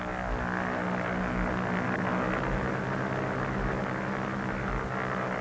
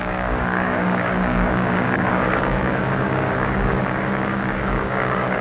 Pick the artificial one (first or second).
second